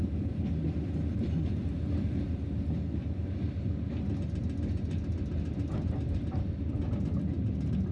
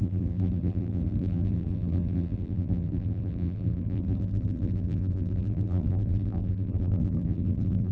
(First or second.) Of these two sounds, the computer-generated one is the second